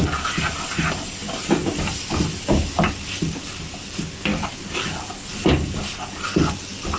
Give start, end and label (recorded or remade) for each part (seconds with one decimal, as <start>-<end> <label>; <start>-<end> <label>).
0.0-7.0 recorded

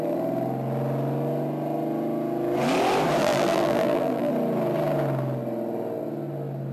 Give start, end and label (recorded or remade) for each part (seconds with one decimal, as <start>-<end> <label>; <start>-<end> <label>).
0.0-3.2 recorded; 3.2-4.3 remade; 4.3-6.7 recorded

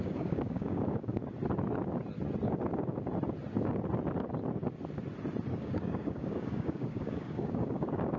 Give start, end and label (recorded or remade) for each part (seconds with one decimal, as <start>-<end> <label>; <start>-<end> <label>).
0.0-1.2 remade; 1.2-5.5 recorded; 5.5-8.2 remade

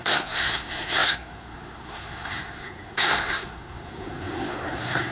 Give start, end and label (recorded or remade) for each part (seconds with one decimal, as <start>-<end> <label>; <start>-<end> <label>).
0.0-5.1 remade

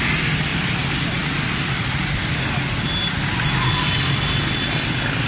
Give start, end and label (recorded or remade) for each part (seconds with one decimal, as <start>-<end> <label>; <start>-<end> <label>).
0.0-5.3 recorded

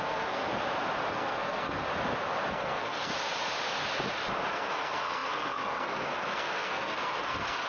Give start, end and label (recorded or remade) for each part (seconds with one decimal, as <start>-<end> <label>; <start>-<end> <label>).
0.0-0.5 remade; 0.5-1.1 recorded; 1.1-1.9 remade; 1.9-2.5 recorded; 2.5-3.1 remade; 3.1-4.5 recorded; 4.5-7.7 remade